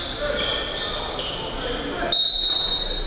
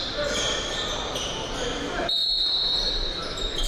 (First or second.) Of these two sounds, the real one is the first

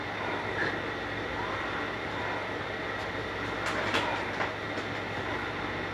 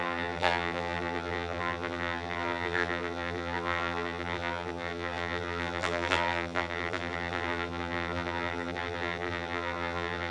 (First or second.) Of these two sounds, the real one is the first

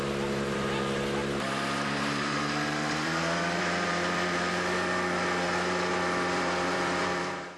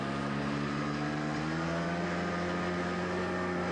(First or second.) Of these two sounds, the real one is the second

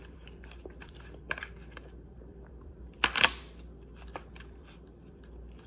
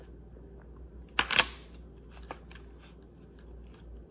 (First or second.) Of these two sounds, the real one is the second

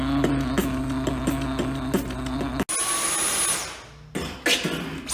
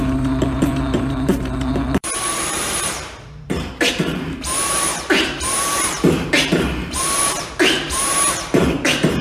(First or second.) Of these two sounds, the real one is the first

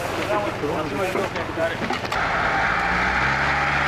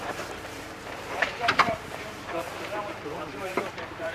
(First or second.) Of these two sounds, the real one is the first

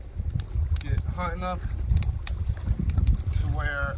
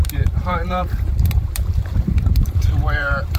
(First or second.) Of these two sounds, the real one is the first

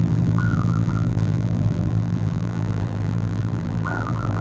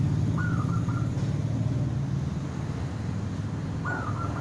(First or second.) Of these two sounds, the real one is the second